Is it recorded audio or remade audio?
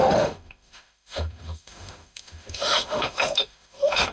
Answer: remade